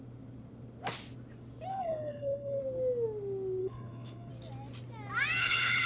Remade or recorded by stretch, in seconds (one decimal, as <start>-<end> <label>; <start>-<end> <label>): 0.0-1.7 recorded; 1.7-2.6 remade; 2.6-3.6 recorded; 3.6-4.3 remade; 4.3-5.4 recorded; 5.4-5.9 remade